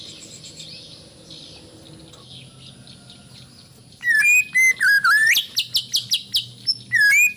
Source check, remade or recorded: recorded